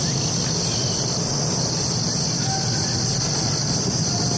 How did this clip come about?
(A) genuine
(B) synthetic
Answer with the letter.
A